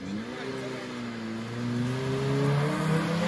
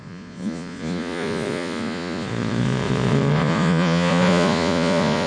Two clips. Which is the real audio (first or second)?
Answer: first